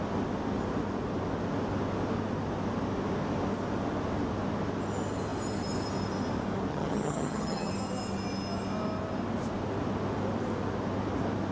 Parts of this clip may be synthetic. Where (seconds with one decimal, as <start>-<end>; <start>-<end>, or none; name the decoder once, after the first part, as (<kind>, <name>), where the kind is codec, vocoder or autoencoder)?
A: 6.7-7.7 (vocoder, HiFi-GAN)